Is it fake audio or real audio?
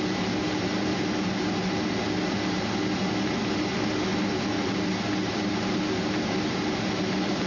real